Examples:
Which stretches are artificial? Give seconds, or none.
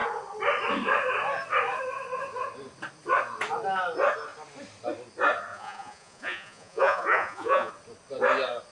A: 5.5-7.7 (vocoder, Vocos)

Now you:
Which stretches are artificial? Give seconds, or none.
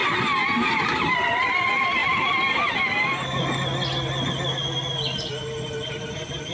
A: 0.7-2.0 (vocoder, BigVGAN v2); 5.9-6.5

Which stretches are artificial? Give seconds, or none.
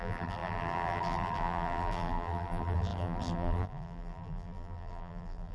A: 0.0-5.5 (vocoder, BigVGAN v2)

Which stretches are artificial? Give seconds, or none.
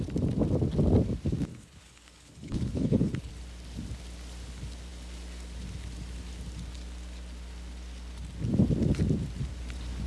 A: 1.5-3.3 (codec, HILCodec)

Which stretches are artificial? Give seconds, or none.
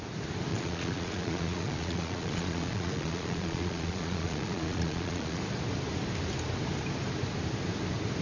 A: 0.5-5.4 (vocoder, Vocos)